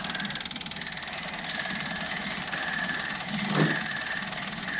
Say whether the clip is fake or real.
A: real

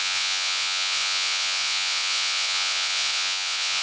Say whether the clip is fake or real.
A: fake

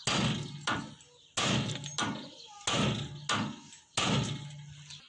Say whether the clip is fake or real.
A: real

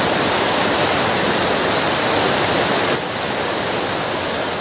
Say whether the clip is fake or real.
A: real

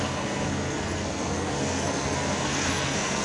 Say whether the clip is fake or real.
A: fake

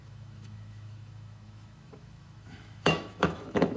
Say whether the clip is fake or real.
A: fake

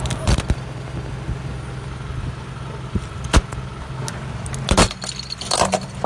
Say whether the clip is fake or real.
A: real